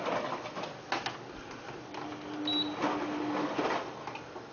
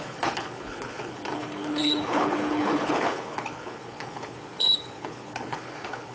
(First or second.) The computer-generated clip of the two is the second